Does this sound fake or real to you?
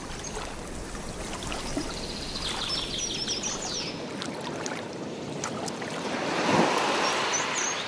real